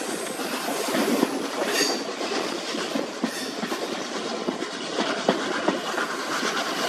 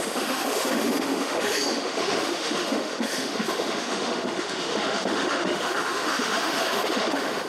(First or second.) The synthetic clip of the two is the second